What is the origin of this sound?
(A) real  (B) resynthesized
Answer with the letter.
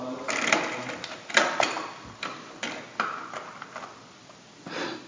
A